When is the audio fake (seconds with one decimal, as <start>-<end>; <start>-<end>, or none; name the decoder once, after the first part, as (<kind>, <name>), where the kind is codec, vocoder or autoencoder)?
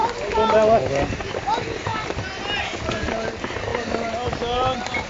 none